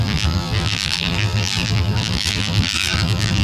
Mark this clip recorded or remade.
remade